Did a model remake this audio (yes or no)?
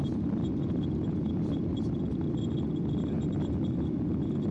yes